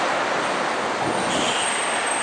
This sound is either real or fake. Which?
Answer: real